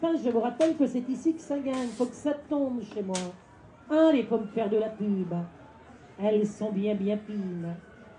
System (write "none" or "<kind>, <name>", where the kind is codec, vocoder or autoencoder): none